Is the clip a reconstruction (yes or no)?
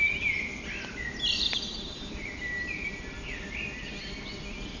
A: no